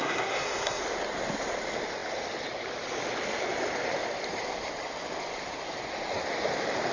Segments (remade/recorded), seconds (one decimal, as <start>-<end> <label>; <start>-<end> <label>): 0.0-0.8 remade; 0.8-6.9 recorded